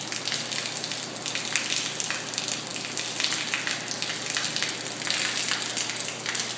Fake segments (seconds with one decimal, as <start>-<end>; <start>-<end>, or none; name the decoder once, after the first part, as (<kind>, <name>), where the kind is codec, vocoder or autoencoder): none